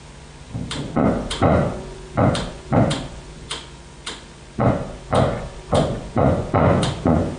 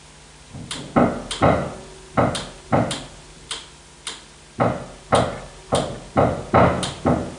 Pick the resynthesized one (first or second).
first